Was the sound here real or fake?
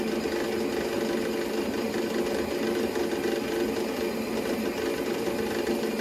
real